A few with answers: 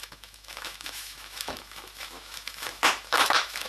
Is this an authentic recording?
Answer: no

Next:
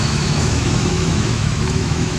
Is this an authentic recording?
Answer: no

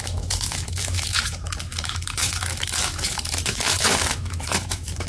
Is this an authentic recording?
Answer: no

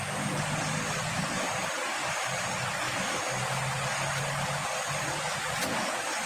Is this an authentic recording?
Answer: yes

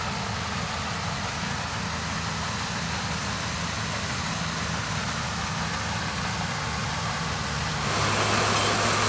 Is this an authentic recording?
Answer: yes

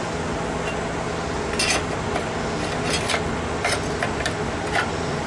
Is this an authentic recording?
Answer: yes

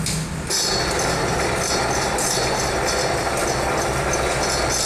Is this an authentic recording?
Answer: yes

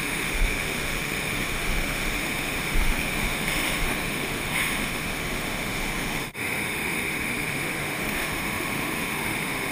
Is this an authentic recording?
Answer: no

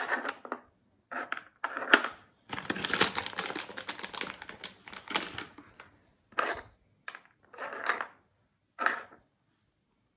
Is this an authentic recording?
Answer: yes